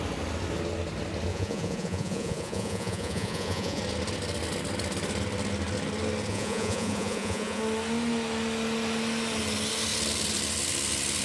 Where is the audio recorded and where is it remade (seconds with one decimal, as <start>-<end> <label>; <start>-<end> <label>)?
0.0-1.3 recorded; 1.3-3.8 remade; 3.8-6.3 recorded; 6.3-7.6 remade; 7.6-11.2 recorded